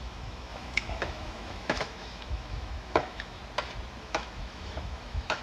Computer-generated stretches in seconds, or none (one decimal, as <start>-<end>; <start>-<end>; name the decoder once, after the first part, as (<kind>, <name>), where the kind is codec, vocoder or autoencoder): 0.0-3.4 (autoencoder, DAC-VAE); 4.0-5.4